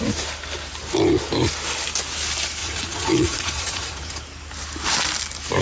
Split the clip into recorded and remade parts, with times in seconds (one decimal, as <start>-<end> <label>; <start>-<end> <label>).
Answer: 0.0-2.6 recorded; 2.6-4.1 remade; 4.1-5.6 recorded